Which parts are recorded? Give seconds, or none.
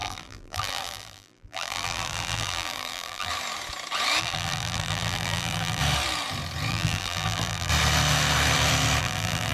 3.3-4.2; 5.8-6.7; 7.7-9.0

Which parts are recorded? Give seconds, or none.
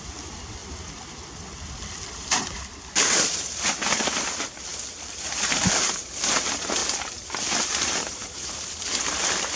0.6-2.2; 6.8-7.4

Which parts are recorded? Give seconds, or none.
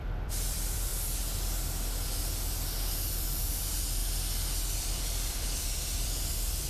0.9-3.1; 4.0-4.8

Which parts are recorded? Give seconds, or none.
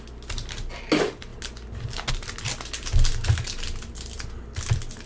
0.0-5.1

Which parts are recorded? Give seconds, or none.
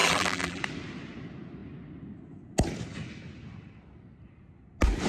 0.6-5.1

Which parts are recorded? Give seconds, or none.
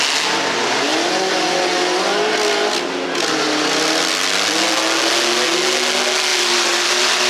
0.0-6.3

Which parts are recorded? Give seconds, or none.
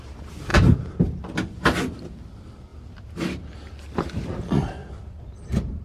0.0-4.8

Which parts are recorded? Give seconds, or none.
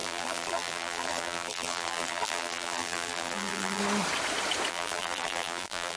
3.8-4.7